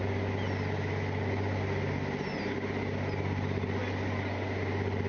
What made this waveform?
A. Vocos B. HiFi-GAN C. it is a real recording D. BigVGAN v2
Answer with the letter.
C